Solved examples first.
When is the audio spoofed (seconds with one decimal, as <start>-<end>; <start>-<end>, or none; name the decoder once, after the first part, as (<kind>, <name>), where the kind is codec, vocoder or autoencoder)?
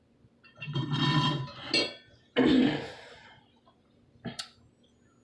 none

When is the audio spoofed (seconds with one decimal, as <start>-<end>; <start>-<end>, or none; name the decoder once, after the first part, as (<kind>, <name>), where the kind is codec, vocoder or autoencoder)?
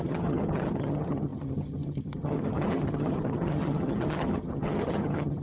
0.0-5.4 (vocoder, HiFi-GAN)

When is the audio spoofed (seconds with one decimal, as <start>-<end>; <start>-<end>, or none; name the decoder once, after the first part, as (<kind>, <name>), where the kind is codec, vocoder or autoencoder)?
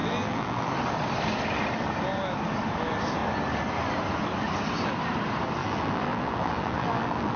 0.0-0.7 (vocoder, BigVGAN v2); 5.6-7.4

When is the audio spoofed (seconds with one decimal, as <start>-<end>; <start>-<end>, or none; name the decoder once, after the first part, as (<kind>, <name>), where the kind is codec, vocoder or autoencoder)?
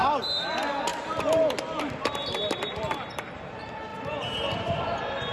0.9-3.4 (vocoder, BigVGAN v2); 3.9-4.8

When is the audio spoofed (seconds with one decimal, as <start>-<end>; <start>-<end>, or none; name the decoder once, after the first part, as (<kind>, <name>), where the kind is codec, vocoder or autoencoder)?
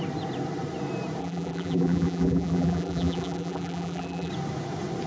1.2-4.3 (vocoder, BigVGAN v2)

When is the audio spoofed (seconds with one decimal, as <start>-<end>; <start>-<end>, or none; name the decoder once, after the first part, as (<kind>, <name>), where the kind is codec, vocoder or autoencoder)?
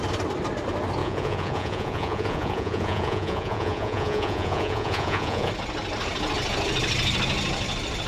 1.0-5.5 (vocoder, Vocos)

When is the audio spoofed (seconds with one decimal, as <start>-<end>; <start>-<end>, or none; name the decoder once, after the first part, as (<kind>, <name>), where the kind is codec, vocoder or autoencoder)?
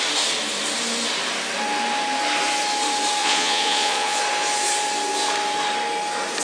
3.2-4.2 (vocoder, Vocos)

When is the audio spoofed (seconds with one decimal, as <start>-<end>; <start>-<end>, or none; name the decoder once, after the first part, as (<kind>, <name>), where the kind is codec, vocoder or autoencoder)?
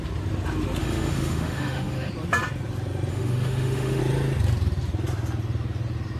0.8-2.1 (autoencoder, DAC-VAE); 3.1-4.0